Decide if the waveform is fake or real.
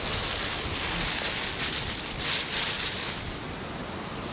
real